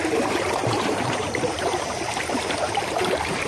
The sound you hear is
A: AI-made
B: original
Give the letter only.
A